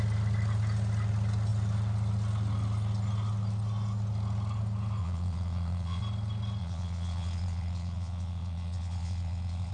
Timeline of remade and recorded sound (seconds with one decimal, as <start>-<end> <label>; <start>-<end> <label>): 0.0-5.0 recorded; 5.0-6.0 remade; 6.0-6.6 recorded; 6.6-9.7 remade

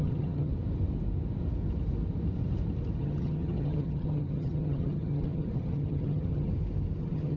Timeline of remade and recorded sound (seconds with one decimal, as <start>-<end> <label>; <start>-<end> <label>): 0.0-0.5 remade; 0.5-3.0 recorded; 3.0-6.5 remade; 6.5-7.0 recorded; 7.0-7.4 remade

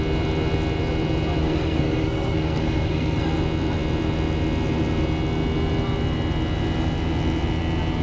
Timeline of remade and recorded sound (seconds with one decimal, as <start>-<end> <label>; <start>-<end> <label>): 0.0-1.4 recorded; 1.4-3.3 remade; 3.3-8.0 recorded

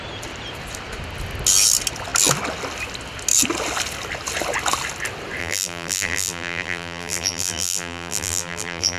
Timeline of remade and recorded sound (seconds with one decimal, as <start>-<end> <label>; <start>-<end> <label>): 0.0-5.4 recorded; 5.4-9.0 remade